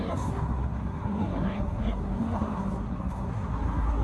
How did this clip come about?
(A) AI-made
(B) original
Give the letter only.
A